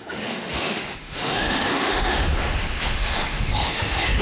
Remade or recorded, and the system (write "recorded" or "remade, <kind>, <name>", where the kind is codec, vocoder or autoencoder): remade, autoencoder, DAC-VAE